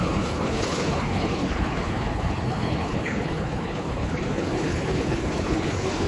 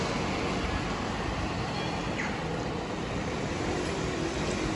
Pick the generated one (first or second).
first